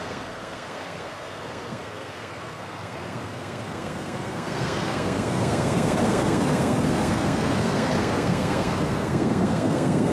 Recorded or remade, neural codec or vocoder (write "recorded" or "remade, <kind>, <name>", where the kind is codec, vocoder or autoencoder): remade, codec, SNAC